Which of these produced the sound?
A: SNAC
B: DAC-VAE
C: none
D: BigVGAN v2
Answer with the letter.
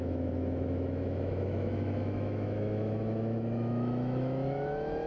B